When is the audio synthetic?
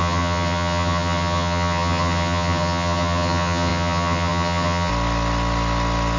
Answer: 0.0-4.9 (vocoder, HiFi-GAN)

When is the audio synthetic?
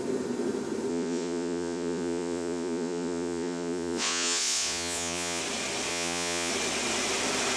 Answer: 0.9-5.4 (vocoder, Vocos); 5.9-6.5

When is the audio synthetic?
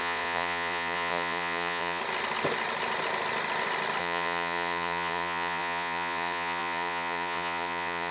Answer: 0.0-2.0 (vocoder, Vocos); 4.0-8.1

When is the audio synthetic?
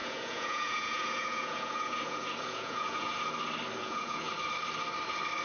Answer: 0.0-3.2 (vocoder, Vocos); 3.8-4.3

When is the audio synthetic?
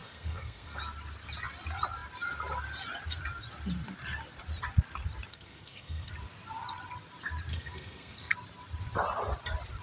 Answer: 0.0-0.8 (codec, SNAC); 5.3-6.1; 7.5-8.3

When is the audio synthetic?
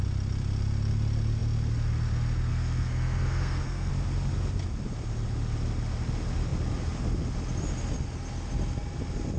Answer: 2.5-3.9 (codec, SNAC)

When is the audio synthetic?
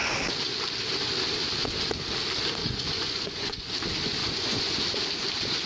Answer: 2.6-3.7 (vocoder, Vocos); 4.2-4.8